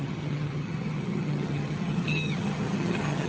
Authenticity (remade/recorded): remade